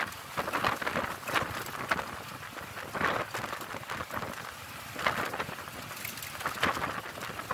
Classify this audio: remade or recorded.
recorded